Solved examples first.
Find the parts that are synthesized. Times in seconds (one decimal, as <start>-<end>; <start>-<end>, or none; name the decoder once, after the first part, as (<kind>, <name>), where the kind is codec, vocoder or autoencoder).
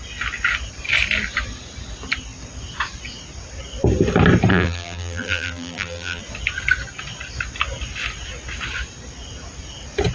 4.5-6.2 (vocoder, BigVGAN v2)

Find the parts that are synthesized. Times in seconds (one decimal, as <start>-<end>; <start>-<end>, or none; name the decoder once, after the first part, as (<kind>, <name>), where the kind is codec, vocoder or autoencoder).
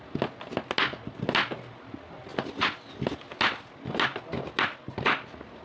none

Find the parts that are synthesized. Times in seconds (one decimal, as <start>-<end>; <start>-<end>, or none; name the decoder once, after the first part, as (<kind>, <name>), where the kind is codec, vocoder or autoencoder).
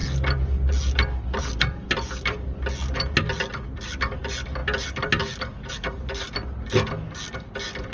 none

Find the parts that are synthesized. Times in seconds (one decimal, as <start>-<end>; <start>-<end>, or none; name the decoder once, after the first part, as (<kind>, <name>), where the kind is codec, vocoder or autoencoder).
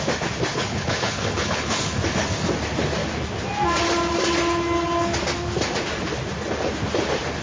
0.5-2.0 (codec, HILCodec)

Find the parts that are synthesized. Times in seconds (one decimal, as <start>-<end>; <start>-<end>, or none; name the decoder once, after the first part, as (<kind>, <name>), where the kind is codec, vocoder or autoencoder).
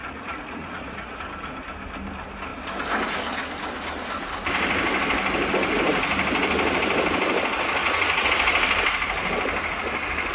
0.0-1.2 (vocoder, Vocos); 7.8-8.3